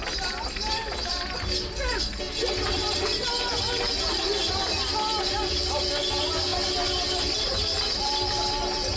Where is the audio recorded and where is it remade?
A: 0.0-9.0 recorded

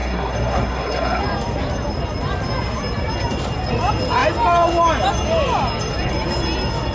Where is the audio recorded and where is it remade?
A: 0.0-1.2 remade; 1.2-6.9 recorded

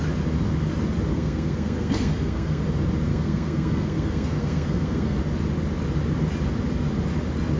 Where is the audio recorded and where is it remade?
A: 0.0-1.1 recorded; 1.1-2.6 remade; 2.6-3.1 recorded; 3.1-5.2 remade; 5.2-7.6 recorded

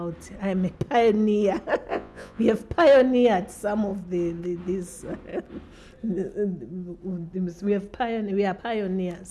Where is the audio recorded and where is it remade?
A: 0.0-1.9 recorded; 1.9-2.4 remade; 2.4-9.3 recorded

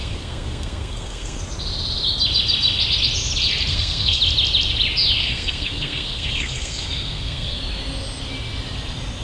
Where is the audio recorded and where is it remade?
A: 0.0-1.4 remade; 1.4-3.7 recorded; 3.7-4.2 remade; 4.2-5.2 recorded; 5.2-7.6 remade; 7.6-9.2 recorded

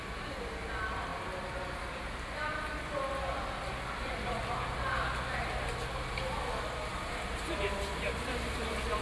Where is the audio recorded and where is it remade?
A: 0.0-6.9 recorded; 6.9-9.0 remade

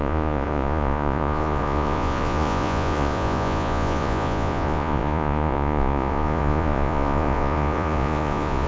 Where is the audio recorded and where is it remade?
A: 0.0-8.7 remade